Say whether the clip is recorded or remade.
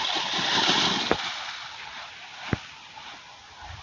recorded